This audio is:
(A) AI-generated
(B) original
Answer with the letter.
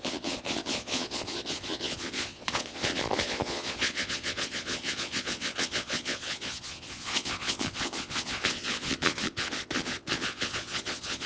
A